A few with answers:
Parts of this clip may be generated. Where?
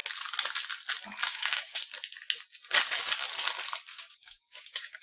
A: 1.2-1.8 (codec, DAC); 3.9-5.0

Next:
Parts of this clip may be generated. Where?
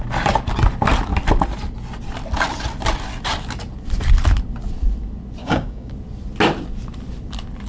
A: 5.4-5.9 (codec, DAC)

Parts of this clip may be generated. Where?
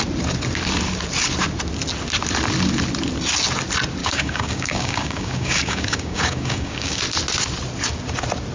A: 4.0-7.0 (codec, DAC)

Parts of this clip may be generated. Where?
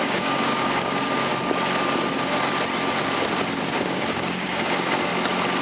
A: 0.0-1.3 (codec, DAC); 3.6-5.1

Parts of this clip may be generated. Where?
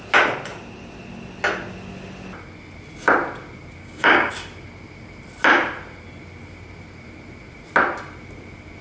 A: 3.8-4.3 (codec, DAC)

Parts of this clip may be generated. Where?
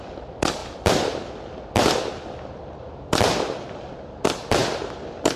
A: none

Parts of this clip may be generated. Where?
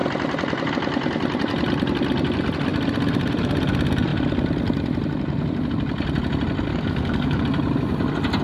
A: 6.7-7.4 (codec, DAC)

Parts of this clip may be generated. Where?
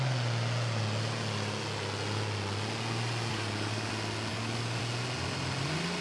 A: 3.3-3.9 (codec, DAC); 4.3-4.8